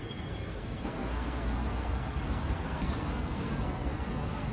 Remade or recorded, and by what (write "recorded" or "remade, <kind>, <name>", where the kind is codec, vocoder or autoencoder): remade, codec, SNAC